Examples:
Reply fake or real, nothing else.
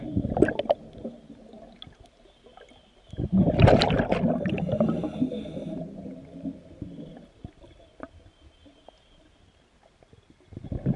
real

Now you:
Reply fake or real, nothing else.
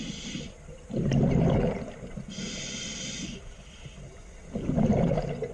real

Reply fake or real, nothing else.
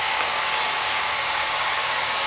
fake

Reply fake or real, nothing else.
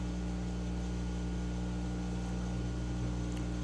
real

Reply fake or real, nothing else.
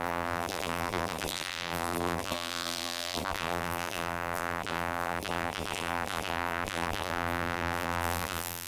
fake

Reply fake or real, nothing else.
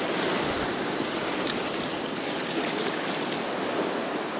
real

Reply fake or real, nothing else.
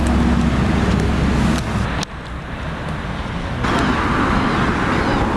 real